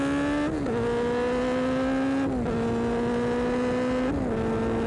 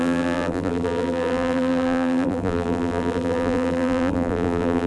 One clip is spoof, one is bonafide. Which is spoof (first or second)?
second